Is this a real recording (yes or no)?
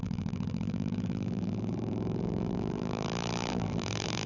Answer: no